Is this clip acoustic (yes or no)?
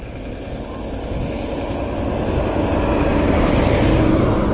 yes